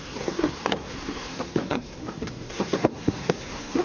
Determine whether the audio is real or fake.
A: fake